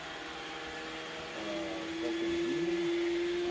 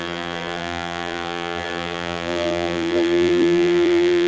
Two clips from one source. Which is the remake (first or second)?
second